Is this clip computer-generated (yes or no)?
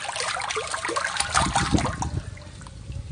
no